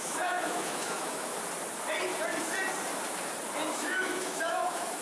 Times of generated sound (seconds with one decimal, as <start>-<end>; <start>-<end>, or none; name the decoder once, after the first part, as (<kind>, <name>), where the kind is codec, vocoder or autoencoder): 0.0-1.3 (autoencoder, DAC-VAE); 3.7-5.0